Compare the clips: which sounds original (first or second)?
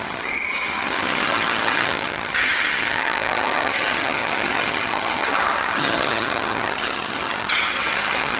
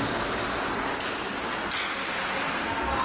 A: second